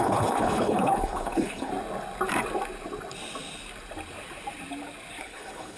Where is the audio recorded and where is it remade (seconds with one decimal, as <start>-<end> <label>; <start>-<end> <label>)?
0.0-1.7 remade; 1.7-5.2 recorded; 5.2-5.8 remade